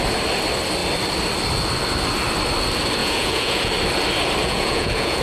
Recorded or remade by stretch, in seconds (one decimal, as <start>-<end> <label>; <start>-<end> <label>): 0.0-3.0 recorded; 3.0-3.7 remade; 3.7-4.4 recorded; 4.4-5.2 remade